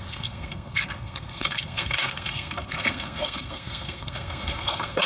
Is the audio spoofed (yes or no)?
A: yes